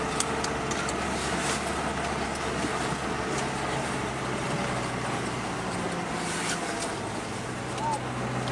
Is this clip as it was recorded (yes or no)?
yes